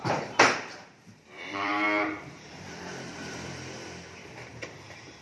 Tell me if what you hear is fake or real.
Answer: fake